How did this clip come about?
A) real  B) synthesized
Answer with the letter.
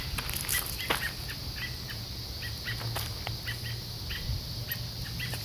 A